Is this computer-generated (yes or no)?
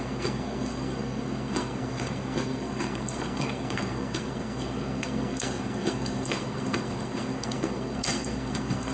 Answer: yes